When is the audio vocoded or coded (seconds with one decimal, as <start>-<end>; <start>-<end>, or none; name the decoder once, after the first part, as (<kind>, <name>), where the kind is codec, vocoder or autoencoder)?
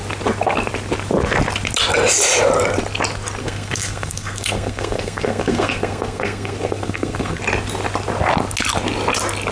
3.4-7.4 (codec, SNAC)